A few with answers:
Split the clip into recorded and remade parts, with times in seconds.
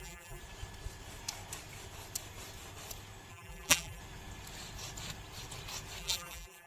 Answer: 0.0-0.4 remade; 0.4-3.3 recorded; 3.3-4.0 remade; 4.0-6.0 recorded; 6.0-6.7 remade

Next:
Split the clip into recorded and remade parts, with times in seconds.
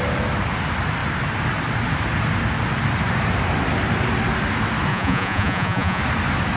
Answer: 0.0-4.9 recorded; 4.9-6.0 remade; 6.0-6.6 recorded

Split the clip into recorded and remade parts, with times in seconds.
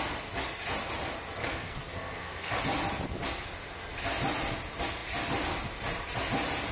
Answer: 0.0-1.4 recorded; 1.4-2.6 remade; 2.6-6.7 recorded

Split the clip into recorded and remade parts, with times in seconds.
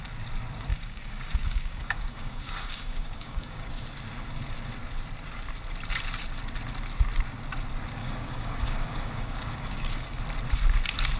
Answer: 0.0-0.7 recorded; 0.7-3.7 remade; 3.7-8.0 recorded; 8.0-10.2 remade; 10.2-11.2 recorded